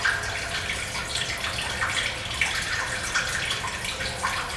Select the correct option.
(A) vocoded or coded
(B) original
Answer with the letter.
B